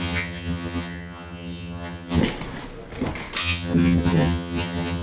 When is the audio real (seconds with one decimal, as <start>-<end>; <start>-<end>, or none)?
2.2-3.4

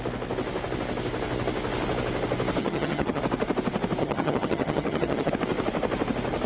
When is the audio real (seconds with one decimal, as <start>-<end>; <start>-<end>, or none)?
0.0-2.6; 3.2-4.0; 5.3-6.5

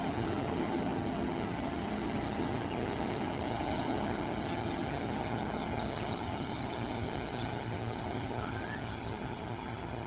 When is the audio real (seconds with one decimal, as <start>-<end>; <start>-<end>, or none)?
none

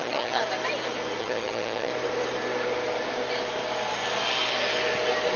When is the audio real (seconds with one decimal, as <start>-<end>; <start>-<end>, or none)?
0.4-1.2; 1.9-5.4

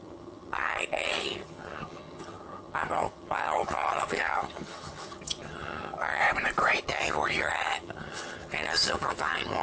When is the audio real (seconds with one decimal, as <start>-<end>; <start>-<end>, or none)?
6.2-6.8

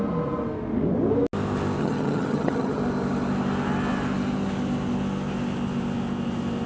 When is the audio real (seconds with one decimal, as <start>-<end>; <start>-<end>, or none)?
0.0-1.8; 2.8-6.7